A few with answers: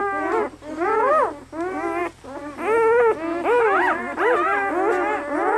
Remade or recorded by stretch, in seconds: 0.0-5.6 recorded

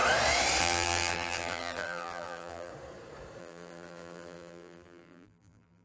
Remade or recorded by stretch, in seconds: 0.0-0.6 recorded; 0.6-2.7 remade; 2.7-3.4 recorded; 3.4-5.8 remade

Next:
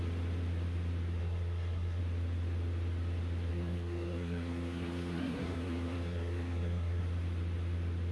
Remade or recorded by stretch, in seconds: 0.0-1.2 recorded; 1.2-2.0 remade; 2.0-3.5 recorded; 3.5-7.0 remade; 7.0-8.1 recorded

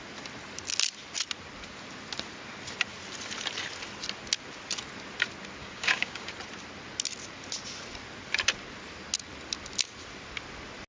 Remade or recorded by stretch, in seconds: 0.0-5.6 recorded; 5.6-6.3 remade; 6.3-10.9 recorded